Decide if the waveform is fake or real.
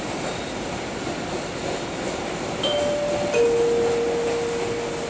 real